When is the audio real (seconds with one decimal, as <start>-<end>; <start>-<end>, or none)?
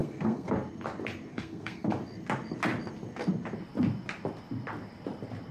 0.5-1.3; 1.9-5.5